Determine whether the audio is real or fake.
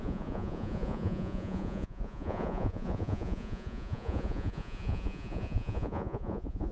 fake